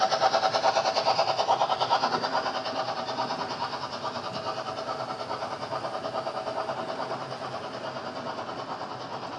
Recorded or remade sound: recorded